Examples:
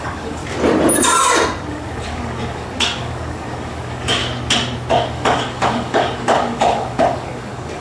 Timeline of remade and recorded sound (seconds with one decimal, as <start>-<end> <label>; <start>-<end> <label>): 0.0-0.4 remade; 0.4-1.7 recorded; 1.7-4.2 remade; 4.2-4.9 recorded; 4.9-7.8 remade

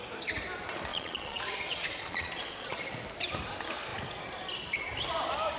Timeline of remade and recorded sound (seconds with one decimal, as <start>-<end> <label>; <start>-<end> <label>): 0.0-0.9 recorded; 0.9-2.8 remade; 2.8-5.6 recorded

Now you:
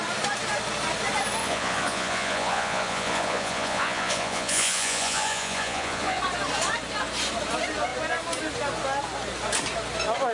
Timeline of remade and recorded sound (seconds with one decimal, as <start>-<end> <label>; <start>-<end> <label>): 0.0-1.4 recorded; 1.4-6.2 remade; 6.2-10.3 recorded

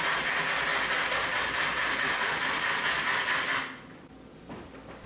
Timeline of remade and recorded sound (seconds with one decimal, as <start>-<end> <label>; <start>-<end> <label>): 0.0-0.7 recorded; 0.7-3.6 remade; 3.6-5.1 recorded

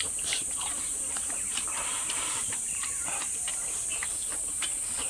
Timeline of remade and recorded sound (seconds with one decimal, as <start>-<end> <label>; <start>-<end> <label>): 0.0-5.1 remade

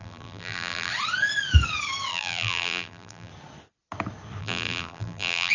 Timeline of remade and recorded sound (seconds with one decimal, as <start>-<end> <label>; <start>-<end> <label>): 0.0-0.9 remade; 0.9-2.1 recorded; 2.1-3.3 remade; 3.3-4.4 recorded; 4.4-5.5 remade